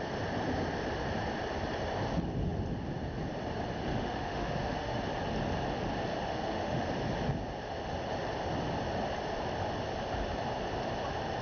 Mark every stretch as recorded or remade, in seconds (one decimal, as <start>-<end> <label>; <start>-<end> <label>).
0.0-3.9 recorded; 3.9-5.0 remade; 5.0-6.3 recorded; 6.3-6.9 remade; 6.9-11.4 recorded